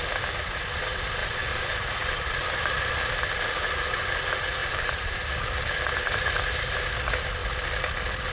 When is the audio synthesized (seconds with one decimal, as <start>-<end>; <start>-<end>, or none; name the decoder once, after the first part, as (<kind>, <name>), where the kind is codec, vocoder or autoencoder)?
1.2-2.9 (vocoder, BigVGAN v2); 4.6-5.2